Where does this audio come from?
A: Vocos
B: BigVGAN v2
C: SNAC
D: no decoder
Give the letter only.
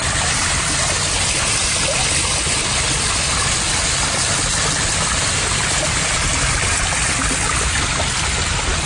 D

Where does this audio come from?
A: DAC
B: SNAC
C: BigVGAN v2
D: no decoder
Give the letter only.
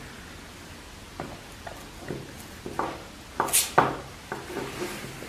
D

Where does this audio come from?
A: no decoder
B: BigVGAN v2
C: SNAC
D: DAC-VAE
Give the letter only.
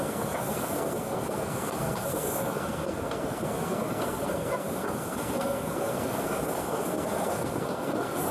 C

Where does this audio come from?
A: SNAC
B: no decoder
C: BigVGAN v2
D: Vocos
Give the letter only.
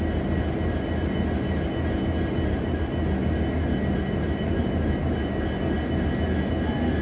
B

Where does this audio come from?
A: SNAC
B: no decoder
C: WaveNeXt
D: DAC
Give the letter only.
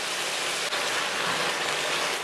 B